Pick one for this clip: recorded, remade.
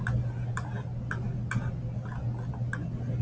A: recorded